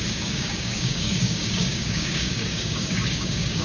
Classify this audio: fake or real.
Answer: fake